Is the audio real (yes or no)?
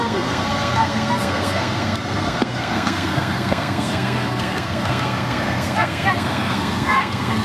no